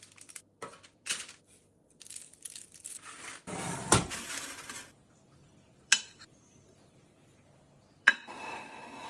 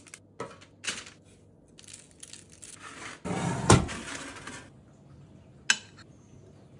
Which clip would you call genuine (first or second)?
second